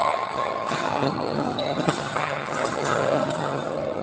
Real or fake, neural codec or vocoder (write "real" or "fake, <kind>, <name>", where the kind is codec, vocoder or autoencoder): fake, vocoder, HiFi-GAN